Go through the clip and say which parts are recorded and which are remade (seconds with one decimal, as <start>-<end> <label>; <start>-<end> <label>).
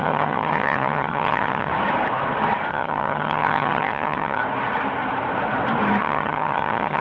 0.0-1.7 remade; 1.7-2.7 recorded; 2.7-4.4 remade; 4.4-6.0 recorded; 6.0-7.0 remade